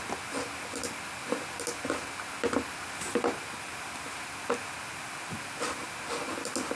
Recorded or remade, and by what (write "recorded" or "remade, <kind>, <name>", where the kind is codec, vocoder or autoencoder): recorded